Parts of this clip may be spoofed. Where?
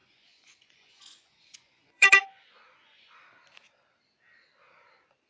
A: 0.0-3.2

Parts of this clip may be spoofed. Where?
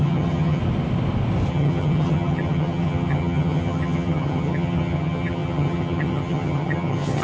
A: 0.0-0.6; 1.5-7.2